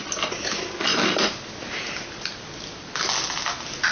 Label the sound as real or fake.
real